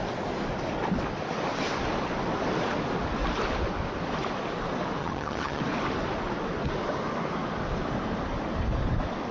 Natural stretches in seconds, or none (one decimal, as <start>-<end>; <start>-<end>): 0.0-5.0; 5.6-9.3